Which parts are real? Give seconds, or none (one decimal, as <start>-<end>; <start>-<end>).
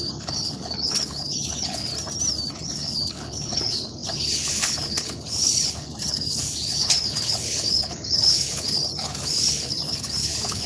1.9-2.5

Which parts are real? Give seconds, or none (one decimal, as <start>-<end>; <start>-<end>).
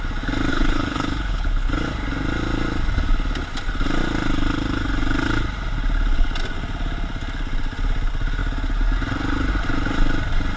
0.0-0.5; 1.7-10.6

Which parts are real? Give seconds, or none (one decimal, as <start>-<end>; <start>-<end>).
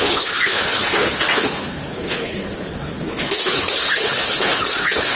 none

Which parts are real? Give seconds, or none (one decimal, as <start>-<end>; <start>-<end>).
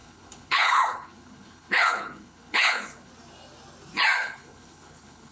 3.1-4.2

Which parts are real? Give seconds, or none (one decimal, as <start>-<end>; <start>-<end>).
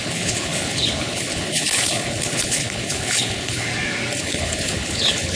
3.7-4.2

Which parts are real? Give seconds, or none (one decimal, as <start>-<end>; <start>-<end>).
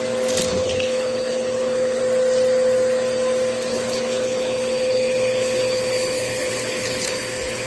0.0-0.5; 2.0-3.7